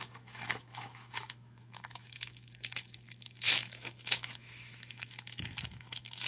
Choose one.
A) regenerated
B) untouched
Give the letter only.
A